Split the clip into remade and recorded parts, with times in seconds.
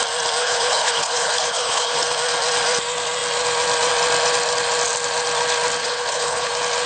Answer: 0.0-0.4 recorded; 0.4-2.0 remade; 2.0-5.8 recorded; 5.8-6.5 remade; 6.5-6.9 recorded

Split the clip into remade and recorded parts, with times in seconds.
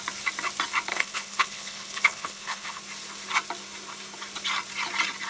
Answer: 0.0-0.9 recorded; 0.9-2.8 remade; 2.8-5.3 recorded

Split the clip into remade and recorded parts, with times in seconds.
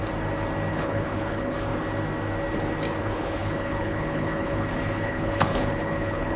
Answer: 0.0-0.7 recorded; 0.7-1.7 remade; 1.7-3.0 recorded; 3.0-6.4 remade